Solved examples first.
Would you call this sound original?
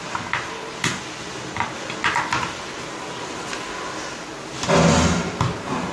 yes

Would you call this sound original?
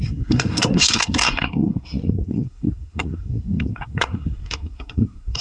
no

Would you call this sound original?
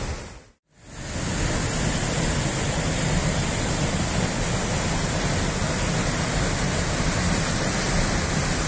yes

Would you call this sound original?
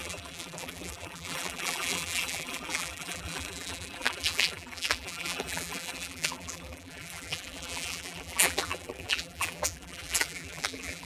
no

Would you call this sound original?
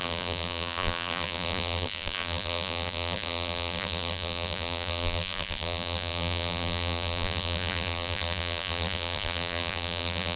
no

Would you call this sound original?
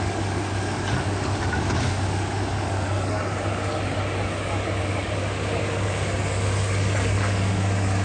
no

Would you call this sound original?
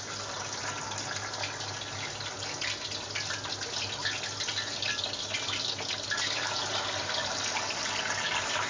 yes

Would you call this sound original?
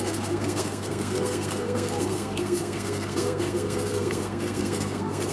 no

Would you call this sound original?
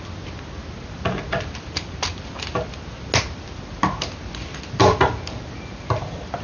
yes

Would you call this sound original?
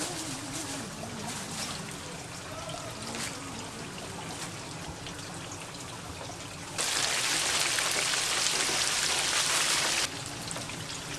yes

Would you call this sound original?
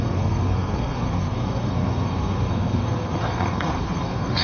no